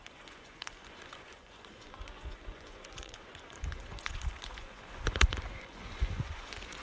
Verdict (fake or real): fake